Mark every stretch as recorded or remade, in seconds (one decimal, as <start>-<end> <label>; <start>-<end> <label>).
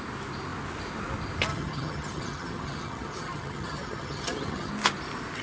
0.0-1.5 recorded; 1.5-4.7 remade; 4.7-5.4 recorded